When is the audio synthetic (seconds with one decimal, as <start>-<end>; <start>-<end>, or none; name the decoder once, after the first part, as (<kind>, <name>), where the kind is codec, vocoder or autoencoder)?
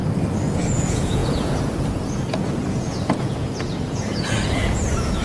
0.6-5.2 (vocoder, Vocos)